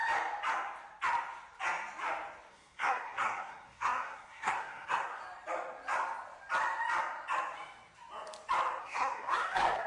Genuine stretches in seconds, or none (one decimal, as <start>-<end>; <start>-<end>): 0.0-2.5; 5.2-8.8